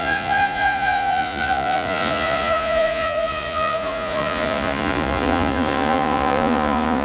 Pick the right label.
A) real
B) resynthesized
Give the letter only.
B